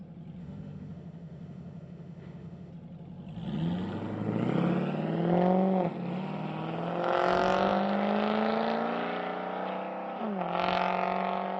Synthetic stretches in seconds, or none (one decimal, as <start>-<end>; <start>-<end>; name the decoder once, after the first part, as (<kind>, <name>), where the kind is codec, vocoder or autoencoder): 0.4-2.7 (autoencoder, DAC-VAE)